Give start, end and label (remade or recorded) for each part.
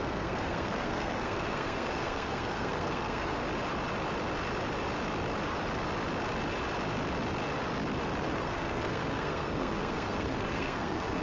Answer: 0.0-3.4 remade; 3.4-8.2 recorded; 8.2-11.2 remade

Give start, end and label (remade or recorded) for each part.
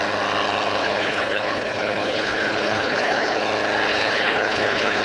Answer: 0.0-0.8 recorded; 0.8-3.4 remade; 3.4-3.9 recorded; 3.9-5.0 remade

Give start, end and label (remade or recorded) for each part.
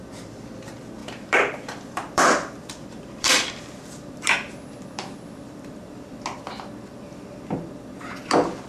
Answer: 0.0-1.0 recorded; 1.0-6.2 remade; 6.2-8.7 recorded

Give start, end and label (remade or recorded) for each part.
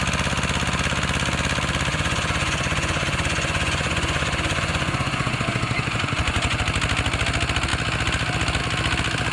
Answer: 0.0-1.9 recorded; 1.9-6.6 remade; 6.6-9.3 recorded